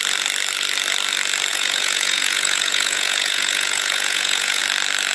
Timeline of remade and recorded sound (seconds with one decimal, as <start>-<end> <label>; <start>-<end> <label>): 0.0-1.5 recorded; 1.5-4.6 remade; 4.6-5.1 recorded